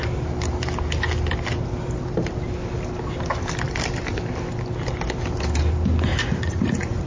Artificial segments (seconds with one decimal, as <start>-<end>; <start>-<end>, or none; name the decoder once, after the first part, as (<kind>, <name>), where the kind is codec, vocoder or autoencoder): 6.1-7.1 (vocoder, Vocos)

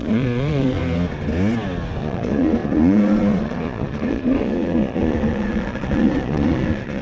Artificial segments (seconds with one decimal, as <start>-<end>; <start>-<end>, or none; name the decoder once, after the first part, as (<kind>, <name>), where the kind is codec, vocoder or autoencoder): 0.0-0.8 (vocoder, Vocos); 2.0-7.0

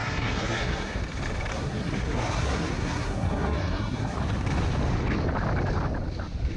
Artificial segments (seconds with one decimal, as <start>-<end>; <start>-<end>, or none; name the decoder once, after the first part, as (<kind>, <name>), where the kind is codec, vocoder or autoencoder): 0.0-1.0 (codec, SNAC); 1.5-4.2

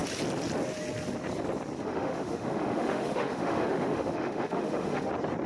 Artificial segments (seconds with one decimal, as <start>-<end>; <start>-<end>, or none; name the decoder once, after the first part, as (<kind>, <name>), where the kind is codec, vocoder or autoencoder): 1.8-5.1 (autoencoder, DAC-VAE)